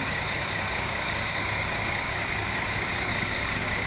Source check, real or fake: fake